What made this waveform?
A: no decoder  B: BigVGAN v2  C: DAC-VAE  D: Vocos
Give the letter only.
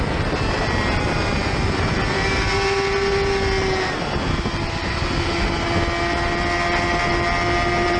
A